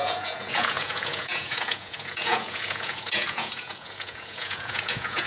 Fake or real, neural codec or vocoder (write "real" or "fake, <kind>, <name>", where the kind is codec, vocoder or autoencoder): fake, vocoder, Vocos